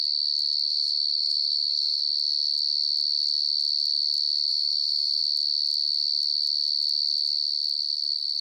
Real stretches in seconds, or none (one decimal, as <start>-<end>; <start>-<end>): 0.0-0.7; 2.0-4.5; 5.2-8.4